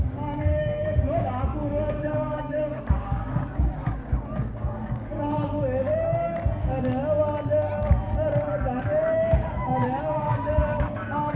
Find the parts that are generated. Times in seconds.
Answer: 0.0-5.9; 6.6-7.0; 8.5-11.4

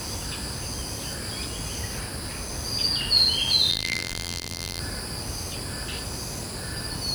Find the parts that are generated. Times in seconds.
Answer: 3.7-4.8